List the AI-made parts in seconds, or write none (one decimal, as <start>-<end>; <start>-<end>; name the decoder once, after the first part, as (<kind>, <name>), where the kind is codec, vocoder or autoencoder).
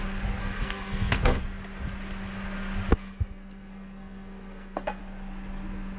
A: 0.4-1.4 (codec, SNAC); 2.9-5.0